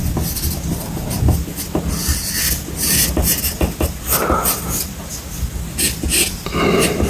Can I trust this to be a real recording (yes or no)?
yes